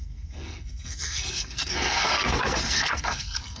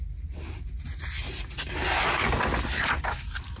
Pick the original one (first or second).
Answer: second